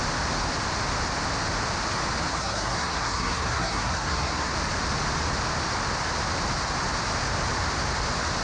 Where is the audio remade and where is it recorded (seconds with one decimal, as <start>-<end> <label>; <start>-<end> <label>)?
0.0-2.3 recorded; 2.3-4.5 remade; 4.5-8.4 recorded